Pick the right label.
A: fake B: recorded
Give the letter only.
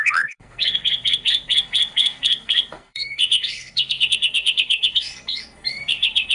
A